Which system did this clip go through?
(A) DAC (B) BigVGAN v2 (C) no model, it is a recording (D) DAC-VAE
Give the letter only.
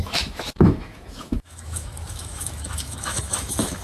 D